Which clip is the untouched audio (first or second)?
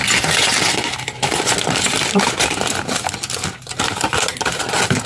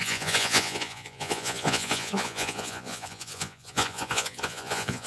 first